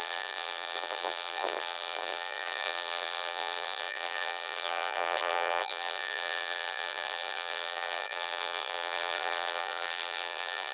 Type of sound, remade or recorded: remade